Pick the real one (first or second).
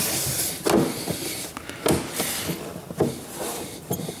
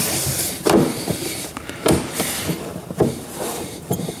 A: first